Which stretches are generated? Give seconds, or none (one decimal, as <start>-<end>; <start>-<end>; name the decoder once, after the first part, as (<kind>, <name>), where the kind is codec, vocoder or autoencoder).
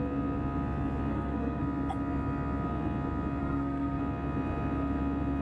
1.1-1.6 (codec, SNAC); 3.4-4.0